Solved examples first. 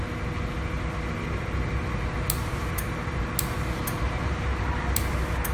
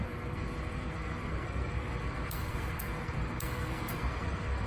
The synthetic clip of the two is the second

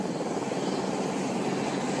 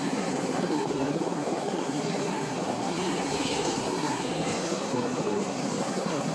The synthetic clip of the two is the second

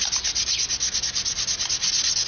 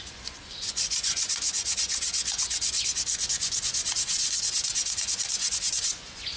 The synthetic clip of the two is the second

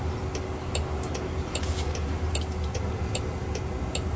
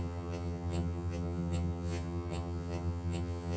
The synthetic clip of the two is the second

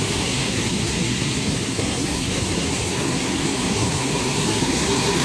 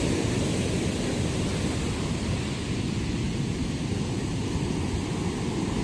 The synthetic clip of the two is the first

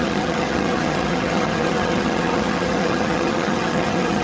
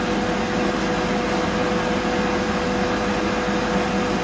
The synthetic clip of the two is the first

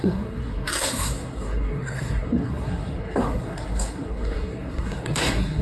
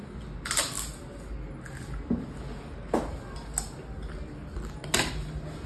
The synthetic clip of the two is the first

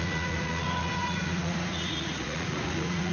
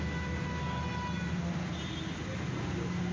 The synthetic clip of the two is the first